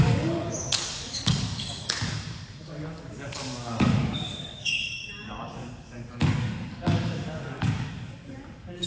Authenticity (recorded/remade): remade